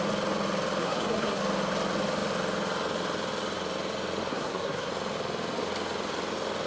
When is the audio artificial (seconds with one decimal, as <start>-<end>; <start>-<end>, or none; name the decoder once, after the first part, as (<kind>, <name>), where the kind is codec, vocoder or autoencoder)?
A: 0.8-1.4 (codec, SNAC); 4.3-4.9